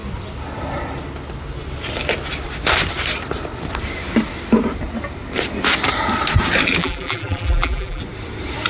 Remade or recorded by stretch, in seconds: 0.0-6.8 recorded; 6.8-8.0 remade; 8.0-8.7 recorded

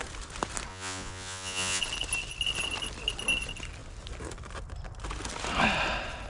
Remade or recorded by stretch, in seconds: 0.0-0.7 recorded; 0.7-1.8 remade; 1.8-6.3 recorded